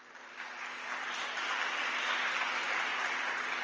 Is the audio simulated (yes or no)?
no